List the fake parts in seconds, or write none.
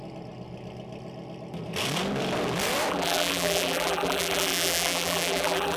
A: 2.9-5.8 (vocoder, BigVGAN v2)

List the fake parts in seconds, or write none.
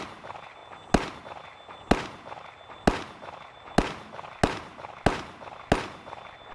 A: none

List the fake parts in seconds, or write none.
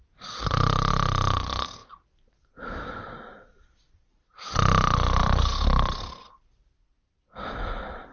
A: 1.8-4.5 (vocoder, BigVGAN v2); 5.2-6.0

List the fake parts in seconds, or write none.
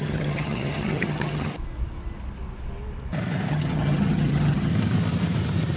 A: 0.0-1.5 (vocoder, HiFi-GAN); 3.5-4.7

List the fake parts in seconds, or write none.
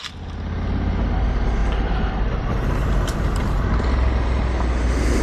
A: 1.6-3.9 (vocoder, BigVGAN v2)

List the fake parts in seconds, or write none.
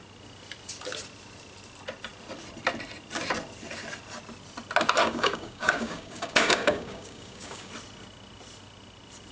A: 5.0-7.7 (codec, DAC)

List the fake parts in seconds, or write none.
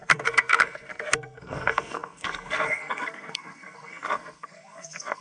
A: 0.0-5.2 (codec, SNAC)